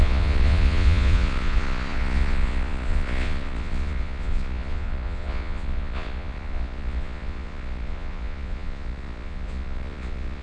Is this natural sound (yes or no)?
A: no